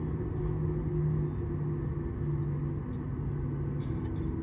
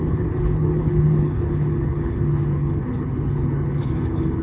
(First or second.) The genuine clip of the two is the first